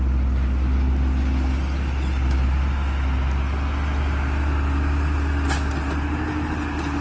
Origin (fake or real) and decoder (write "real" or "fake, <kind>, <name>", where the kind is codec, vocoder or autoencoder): real